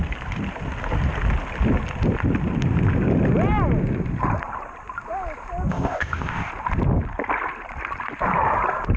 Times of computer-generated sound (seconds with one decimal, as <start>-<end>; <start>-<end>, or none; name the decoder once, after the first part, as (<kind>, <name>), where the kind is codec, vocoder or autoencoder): 5.7-6.5 (codec, ZipCodec)